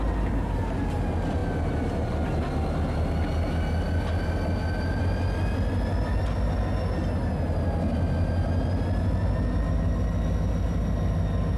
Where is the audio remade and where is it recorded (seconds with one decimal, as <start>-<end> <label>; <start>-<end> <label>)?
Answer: 0.0-11.6 recorded